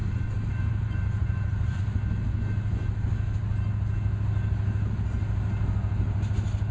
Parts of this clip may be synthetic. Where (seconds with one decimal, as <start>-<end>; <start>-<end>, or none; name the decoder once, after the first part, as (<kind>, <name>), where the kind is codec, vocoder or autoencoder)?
0.0-1.8 (vocoder, BigVGAN v2)